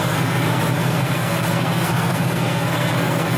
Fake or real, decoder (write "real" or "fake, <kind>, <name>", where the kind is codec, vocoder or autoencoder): fake, codec, SNAC